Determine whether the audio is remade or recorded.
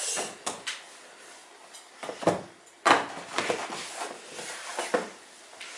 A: recorded